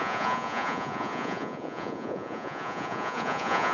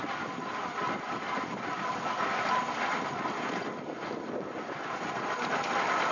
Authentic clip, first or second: second